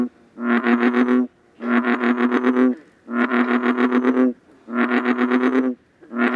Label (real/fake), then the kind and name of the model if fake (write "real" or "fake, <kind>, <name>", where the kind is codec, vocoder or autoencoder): real